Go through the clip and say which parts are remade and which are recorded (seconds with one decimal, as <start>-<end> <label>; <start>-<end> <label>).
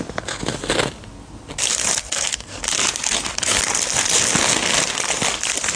0.0-2.0 recorded; 2.0-2.6 remade; 2.6-5.8 recorded